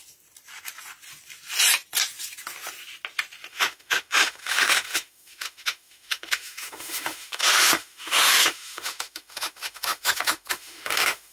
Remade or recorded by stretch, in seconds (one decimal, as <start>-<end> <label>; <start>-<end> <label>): 0.0-3.5 recorded; 3.5-11.3 remade